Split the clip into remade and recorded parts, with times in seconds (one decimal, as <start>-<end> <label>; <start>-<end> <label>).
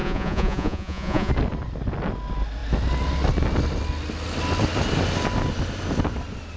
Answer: 0.0-1.3 remade; 1.3-6.6 recorded